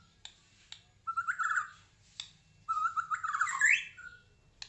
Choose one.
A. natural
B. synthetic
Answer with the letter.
A